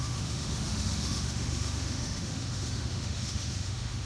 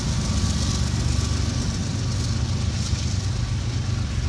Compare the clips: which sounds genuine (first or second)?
second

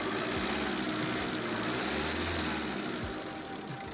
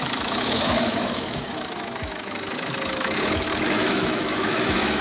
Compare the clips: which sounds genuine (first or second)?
first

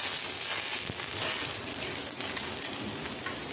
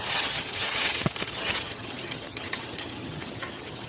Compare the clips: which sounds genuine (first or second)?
first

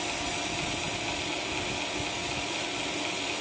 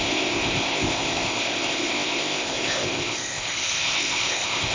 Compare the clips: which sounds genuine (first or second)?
first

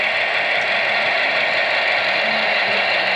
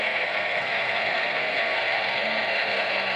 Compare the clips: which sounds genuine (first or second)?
first